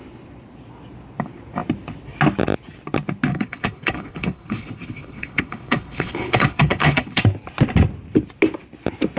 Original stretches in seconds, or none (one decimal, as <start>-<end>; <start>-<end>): 0.0-3.3; 7.2-9.2